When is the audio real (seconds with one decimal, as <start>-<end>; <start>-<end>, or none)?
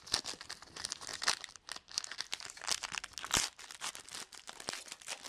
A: 0.0-5.3